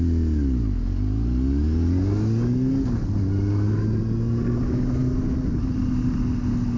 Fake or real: real